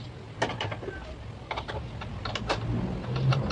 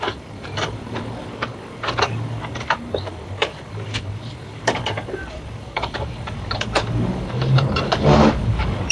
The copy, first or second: second